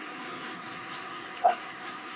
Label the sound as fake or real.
fake